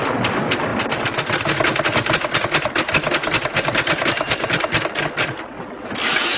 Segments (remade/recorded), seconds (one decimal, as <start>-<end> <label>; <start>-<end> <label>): 0.0-3.5 recorded; 3.5-4.3 remade; 4.3-6.4 recorded